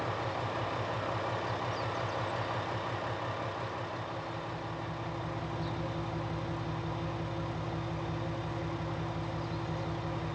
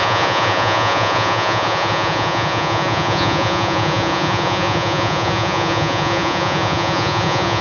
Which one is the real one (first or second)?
first